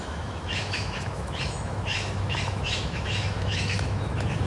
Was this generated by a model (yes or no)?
yes